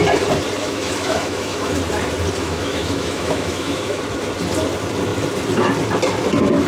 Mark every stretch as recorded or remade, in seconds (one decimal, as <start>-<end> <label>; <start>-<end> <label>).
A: 0.0-0.6 recorded; 0.6-1.8 remade; 1.8-2.4 recorded; 2.4-4.0 remade; 4.0-6.7 recorded